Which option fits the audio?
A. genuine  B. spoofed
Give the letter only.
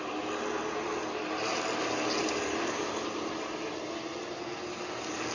A